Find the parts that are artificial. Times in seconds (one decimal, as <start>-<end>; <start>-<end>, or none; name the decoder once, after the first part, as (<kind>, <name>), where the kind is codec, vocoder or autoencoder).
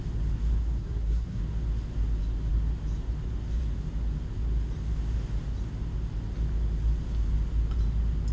0.6-1.4 (codec, SNAC)